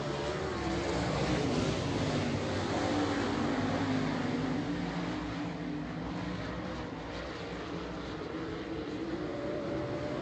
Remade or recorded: recorded